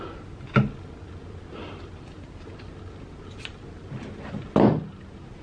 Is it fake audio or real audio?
real